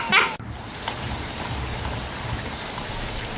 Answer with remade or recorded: recorded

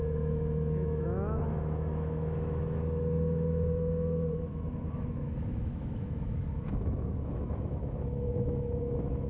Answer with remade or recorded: remade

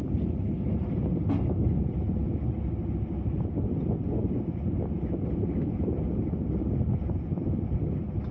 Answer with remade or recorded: recorded